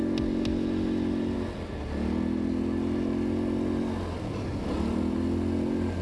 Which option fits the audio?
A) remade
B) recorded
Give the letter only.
B